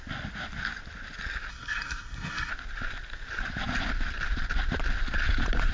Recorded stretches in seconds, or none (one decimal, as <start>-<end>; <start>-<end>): 0.0-1.5; 2.5-5.7